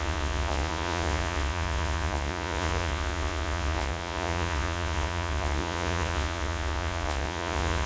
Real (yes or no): no